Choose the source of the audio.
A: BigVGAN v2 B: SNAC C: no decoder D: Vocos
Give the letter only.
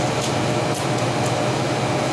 C